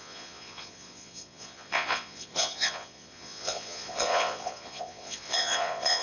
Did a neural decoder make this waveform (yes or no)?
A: yes